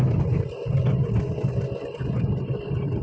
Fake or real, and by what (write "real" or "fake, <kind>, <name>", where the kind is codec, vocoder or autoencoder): real